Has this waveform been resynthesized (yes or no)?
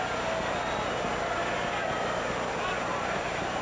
no